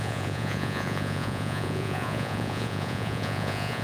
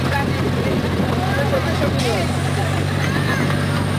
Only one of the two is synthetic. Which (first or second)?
first